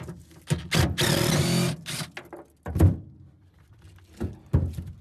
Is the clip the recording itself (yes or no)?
yes